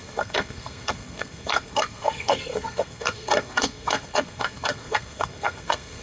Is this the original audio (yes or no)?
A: no